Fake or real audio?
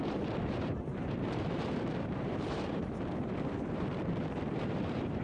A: fake